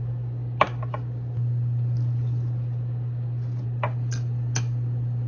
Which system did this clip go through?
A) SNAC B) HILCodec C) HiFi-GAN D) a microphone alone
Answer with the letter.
D